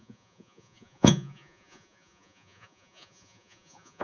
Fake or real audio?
fake